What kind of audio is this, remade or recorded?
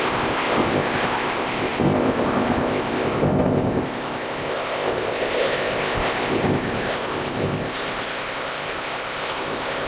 remade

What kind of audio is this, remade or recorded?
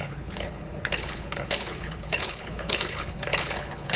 remade